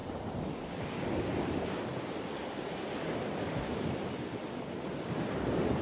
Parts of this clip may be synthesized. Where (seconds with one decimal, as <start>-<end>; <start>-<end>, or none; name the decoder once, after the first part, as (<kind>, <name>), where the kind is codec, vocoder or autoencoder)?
none